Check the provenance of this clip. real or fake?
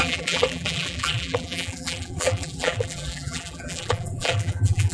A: fake